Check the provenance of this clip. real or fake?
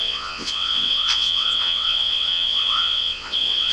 fake